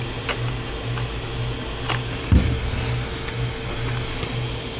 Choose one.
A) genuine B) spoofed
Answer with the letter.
A